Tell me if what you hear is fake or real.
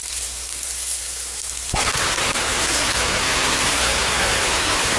fake